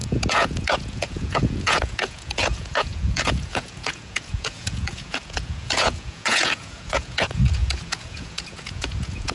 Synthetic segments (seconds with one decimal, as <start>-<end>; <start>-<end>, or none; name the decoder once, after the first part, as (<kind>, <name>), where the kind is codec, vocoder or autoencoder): 0.0-9.3 (vocoder, Vocos)